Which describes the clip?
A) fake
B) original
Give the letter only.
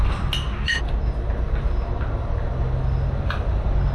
B